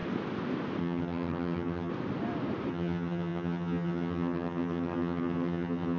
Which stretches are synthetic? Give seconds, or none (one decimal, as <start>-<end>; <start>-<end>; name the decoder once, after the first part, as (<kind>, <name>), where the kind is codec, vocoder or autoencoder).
0.8-1.9 (vocoder, HiFi-GAN); 2.7-6.0